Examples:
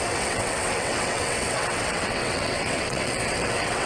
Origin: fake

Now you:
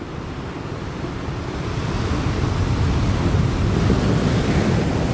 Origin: real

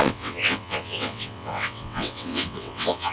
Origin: fake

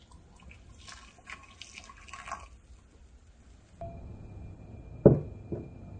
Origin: real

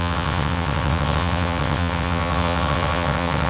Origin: fake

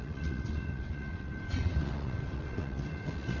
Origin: fake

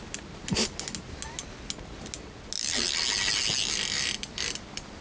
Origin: real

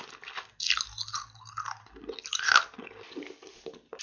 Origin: real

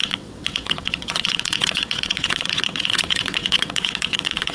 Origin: fake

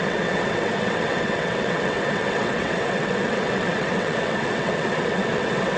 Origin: fake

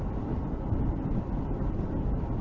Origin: real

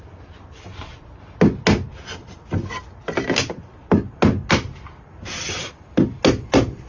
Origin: real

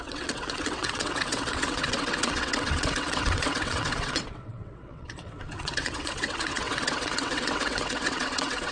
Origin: fake